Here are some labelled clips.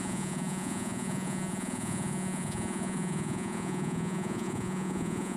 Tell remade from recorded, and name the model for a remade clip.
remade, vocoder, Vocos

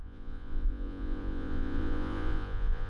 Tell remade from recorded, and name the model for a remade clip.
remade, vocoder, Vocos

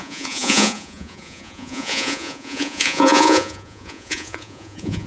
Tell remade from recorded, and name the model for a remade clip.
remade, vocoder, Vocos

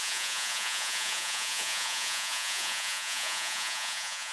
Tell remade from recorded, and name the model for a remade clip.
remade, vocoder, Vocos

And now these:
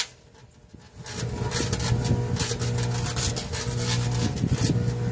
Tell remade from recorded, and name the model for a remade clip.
recorded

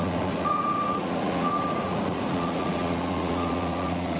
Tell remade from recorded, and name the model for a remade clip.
remade, vocoder, Vocos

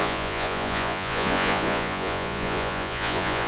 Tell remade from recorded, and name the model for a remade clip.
remade, vocoder, Vocos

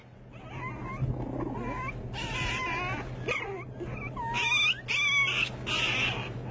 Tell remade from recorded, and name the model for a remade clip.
recorded